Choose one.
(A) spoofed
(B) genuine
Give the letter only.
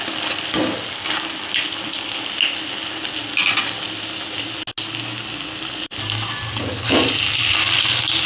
B